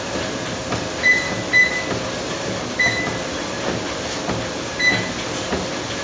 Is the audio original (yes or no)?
yes